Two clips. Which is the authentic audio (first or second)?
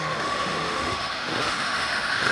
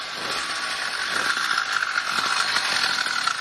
second